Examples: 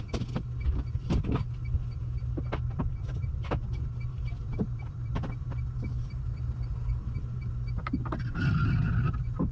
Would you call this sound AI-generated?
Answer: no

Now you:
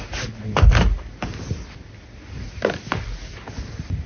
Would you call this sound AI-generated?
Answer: no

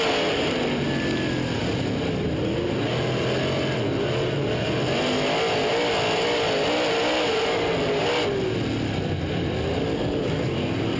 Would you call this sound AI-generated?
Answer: no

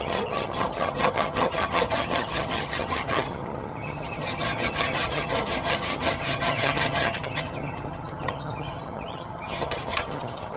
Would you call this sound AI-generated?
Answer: yes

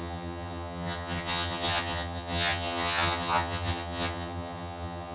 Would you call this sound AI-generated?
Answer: yes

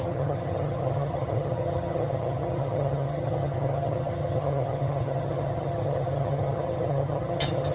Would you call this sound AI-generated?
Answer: yes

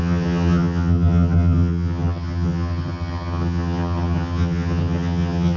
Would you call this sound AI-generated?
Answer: yes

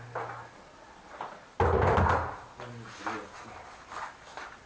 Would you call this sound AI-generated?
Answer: no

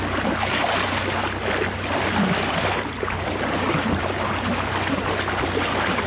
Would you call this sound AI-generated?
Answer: no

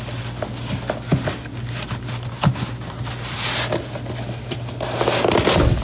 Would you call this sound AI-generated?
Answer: no